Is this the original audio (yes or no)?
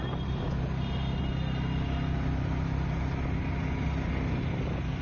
yes